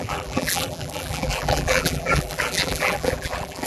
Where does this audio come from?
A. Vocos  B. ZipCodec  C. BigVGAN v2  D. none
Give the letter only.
C